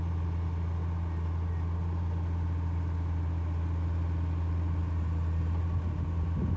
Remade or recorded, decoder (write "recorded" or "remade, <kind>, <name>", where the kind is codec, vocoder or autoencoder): recorded